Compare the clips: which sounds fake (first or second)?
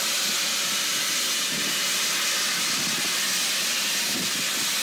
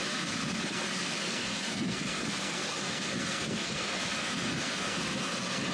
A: second